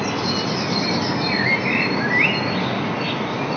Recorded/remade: recorded